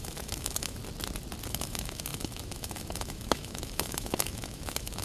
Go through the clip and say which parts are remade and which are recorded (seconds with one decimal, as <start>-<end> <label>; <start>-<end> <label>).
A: 0.0-0.8 remade; 0.8-1.5 recorded; 1.5-5.0 remade